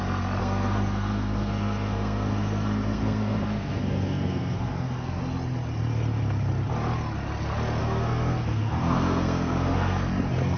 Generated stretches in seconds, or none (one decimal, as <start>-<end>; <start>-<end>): 0.4-5.2; 7.8-10.1